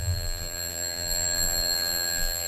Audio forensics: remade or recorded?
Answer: remade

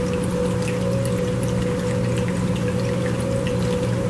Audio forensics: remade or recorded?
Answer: recorded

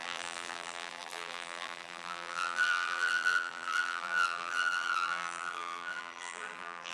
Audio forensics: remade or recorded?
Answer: remade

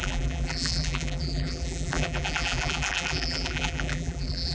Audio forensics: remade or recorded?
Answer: remade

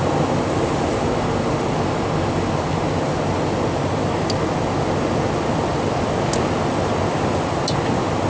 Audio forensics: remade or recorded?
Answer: recorded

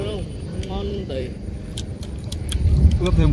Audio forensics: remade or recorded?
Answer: remade